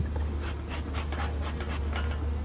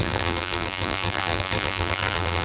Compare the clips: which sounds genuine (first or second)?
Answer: first